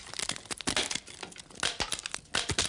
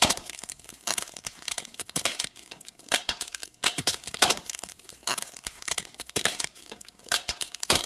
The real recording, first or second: first